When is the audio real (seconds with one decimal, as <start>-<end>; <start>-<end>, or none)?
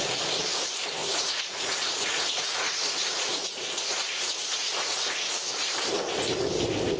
0.0-1.0; 5.2-7.0